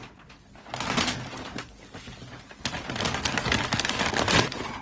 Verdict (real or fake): real